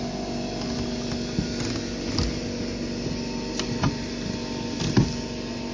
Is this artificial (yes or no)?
no